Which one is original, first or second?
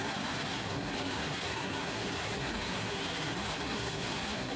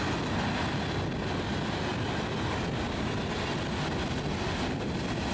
second